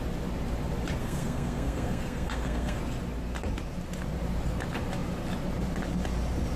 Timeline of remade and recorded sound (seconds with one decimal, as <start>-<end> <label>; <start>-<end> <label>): 0.0-1.0 recorded; 1.0-2.8 remade; 2.8-6.6 recorded